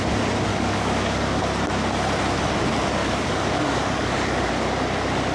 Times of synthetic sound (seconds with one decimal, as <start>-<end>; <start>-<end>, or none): 0.5-1.4; 3.0-4.5